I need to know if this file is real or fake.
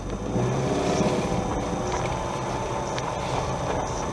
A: real